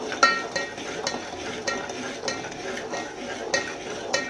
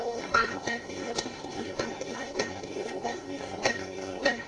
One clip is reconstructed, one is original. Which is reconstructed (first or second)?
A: second